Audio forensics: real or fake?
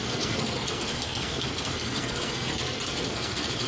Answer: fake